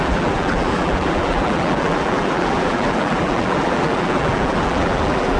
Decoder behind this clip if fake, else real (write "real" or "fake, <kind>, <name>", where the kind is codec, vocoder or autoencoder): fake, vocoder, BigVGAN v2